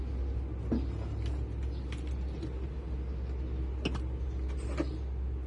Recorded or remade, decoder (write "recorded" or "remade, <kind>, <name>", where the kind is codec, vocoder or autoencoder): recorded